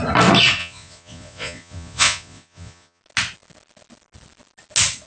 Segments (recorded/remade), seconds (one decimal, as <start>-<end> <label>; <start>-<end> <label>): 0.0-0.6 recorded; 0.6-3.0 remade; 3.0-5.1 recorded